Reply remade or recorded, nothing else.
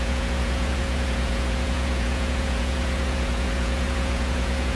remade